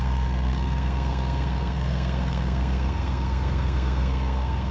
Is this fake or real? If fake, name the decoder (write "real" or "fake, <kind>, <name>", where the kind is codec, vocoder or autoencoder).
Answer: fake, codec, SNAC